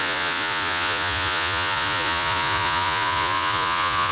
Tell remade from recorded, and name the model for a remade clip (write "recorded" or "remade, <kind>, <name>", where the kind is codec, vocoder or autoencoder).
remade, vocoder, Vocos